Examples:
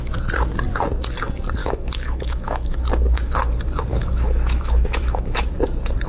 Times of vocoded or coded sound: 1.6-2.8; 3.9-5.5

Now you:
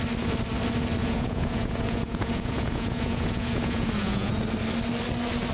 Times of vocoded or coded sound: 1.0-4.3